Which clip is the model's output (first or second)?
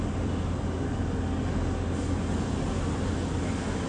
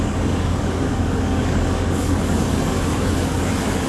second